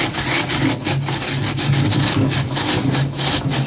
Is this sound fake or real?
real